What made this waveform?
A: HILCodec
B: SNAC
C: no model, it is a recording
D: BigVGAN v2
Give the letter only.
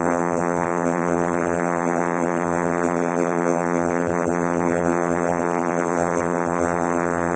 D